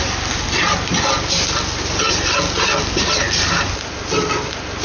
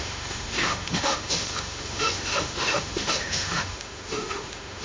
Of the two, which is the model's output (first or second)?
second